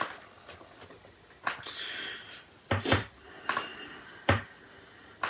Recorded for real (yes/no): yes